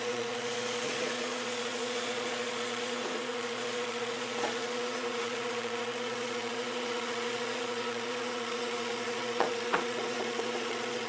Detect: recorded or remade remade